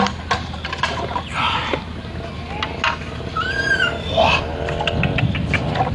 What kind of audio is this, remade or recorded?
recorded